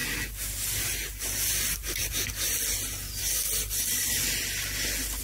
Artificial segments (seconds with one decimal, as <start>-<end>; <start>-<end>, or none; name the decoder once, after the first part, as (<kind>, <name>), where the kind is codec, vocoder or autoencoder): none

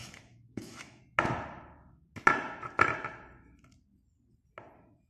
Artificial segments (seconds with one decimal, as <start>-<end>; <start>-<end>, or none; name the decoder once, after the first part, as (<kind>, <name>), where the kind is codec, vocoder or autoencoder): 0.0-1.0 (autoencoder, DAC-VAE)

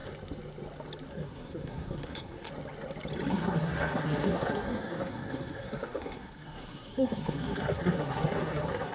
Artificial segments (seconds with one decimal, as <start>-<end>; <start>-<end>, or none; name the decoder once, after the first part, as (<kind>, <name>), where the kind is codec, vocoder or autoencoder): 1.1-2.5 (codec, SNAC); 3.3-8.9